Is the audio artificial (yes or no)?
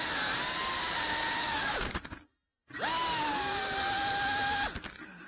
no